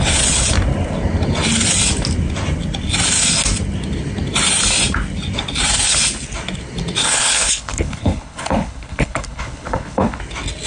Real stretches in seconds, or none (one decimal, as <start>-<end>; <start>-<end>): 0.0-7.0; 10.2-10.7